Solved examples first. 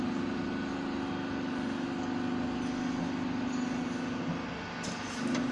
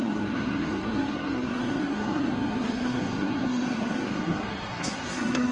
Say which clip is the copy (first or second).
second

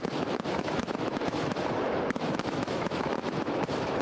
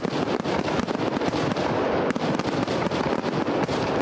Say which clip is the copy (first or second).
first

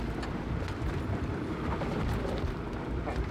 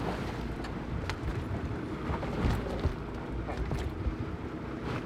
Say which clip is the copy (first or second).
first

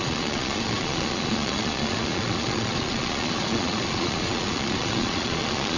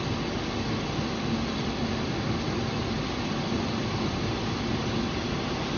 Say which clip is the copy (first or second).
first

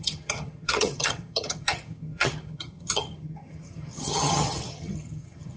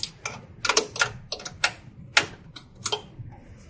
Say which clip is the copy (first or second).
first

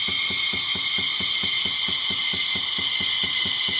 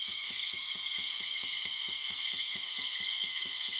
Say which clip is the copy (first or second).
second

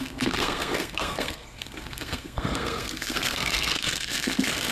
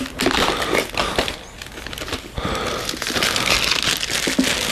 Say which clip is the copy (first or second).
first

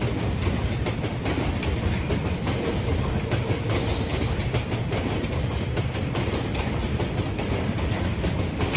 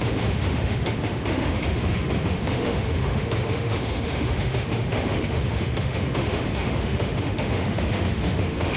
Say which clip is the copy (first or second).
second